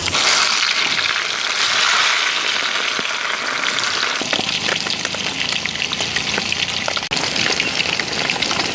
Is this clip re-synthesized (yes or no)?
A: no